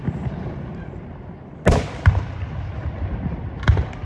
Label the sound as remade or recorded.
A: recorded